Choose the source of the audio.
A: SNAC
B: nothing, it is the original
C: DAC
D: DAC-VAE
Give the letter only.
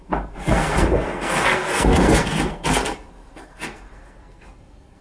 A